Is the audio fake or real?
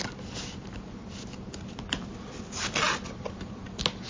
real